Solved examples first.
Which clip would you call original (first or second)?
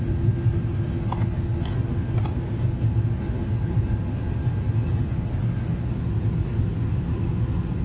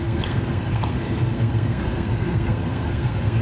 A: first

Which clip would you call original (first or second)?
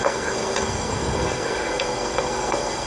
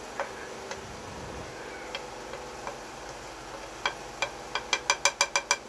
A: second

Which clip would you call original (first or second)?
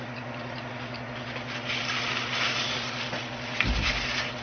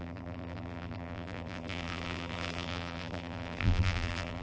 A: first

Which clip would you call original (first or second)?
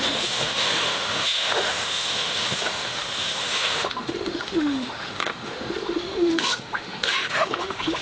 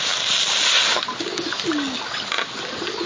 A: second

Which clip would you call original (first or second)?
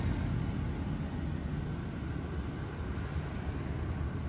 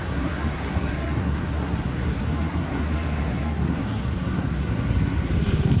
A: first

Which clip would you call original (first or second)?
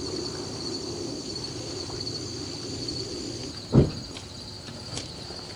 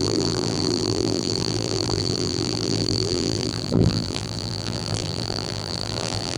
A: first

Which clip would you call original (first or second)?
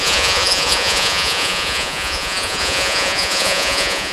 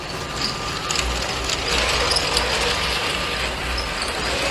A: second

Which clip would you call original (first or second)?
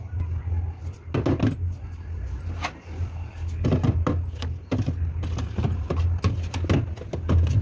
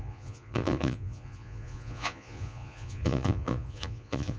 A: first